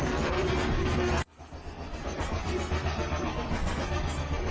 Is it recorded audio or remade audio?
remade